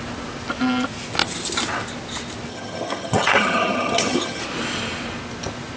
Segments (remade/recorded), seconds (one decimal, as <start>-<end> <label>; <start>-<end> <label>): 0.0-2.5 recorded; 2.5-4.4 remade; 4.4-5.8 recorded